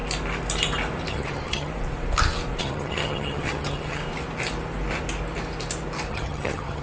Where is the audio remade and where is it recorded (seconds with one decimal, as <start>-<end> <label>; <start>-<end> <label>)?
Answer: 0.0-1.1 recorded; 1.1-1.7 remade; 1.7-2.6 recorded; 2.6-4.0 remade; 4.0-6.1 recorded; 6.1-6.8 remade